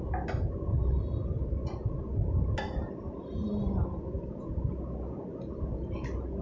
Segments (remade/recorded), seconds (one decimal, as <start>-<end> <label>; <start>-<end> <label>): 0.0-6.4 recorded